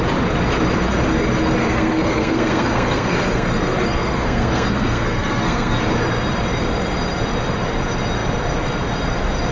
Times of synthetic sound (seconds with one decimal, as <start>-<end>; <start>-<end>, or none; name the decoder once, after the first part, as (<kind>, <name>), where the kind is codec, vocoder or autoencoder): 1.6-5.8 (codec, SNAC)